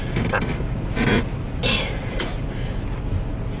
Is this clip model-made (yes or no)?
no